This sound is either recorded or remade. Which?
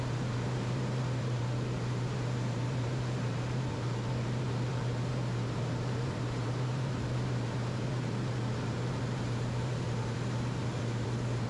remade